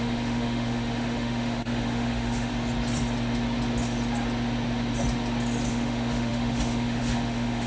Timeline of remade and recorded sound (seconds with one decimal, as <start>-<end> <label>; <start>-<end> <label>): 0.0-2.5 remade; 2.5-5.7 recorded; 5.7-7.7 remade